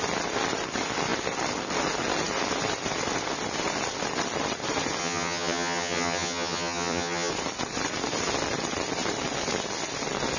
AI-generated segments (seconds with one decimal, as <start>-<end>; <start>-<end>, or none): 5.0-7.3